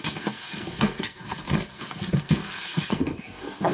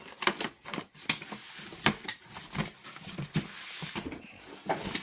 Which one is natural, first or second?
second